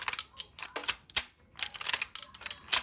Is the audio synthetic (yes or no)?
no